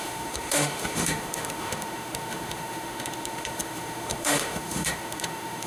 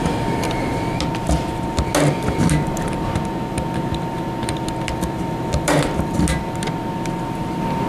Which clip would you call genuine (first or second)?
second